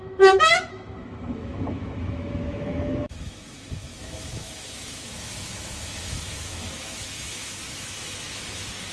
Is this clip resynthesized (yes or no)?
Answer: yes